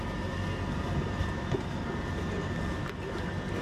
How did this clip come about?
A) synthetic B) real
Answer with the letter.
B